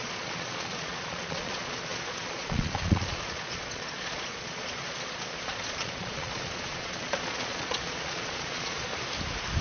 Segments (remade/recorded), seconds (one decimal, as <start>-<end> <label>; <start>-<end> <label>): 0.0-8.9 remade; 8.9-9.6 recorded